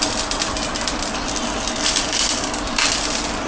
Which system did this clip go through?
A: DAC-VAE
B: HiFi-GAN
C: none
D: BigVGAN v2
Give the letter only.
D